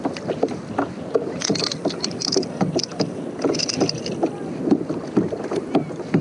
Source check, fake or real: real